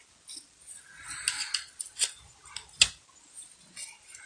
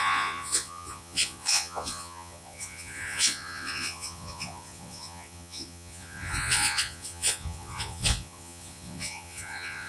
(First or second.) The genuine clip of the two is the first